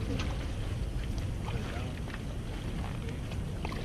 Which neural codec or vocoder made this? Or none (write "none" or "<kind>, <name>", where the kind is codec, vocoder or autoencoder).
none